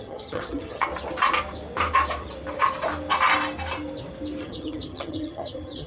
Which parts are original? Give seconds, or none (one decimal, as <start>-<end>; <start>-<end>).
0.9-4.4